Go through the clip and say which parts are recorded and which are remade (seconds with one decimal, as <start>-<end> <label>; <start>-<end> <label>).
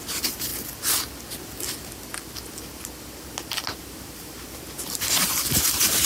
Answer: 0.0-0.5 remade; 0.5-3.8 recorded; 3.8-6.1 remade